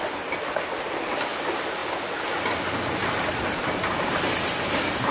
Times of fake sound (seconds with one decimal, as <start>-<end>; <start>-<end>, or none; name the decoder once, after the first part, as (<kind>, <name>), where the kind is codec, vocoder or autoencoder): none